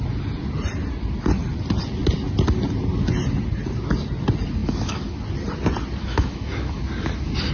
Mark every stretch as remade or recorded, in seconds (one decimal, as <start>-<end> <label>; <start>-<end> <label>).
0.0-4.6 recorded; 4.6-5.2 remade; 5.2-6.0 recorded; 6.0-6.8 remade; 6.8-7.5 recorded

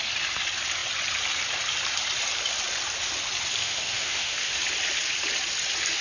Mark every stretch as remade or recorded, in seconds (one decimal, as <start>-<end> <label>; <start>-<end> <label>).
0.0-3.6 recorded; 3.6-4.6 remade; 4.6-6.0 recorded

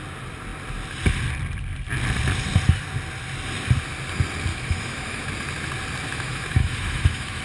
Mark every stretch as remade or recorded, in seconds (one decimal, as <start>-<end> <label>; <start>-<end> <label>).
0.0-4.5 recorded; 4.5-5.3 remade; 5.3-6.1 recorded; 6.1-7.4 remade

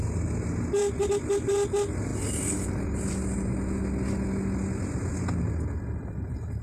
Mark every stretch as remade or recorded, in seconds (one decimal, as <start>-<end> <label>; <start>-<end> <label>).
0.0-6.6 recorded

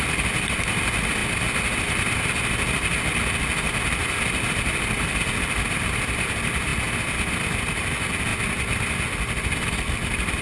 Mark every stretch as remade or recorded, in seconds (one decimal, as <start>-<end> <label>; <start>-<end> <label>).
0.0-10.4 recorded

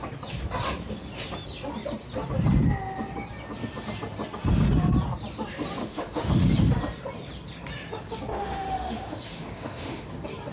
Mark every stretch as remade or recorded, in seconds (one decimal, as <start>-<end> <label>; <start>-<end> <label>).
0.0-5.8 recorded; 5.8-6.5 remade; 6.5-8.3 recorded; 8.3-10.1 remade; 10.1-10.5 recorded